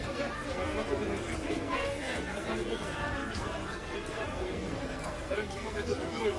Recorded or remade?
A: remade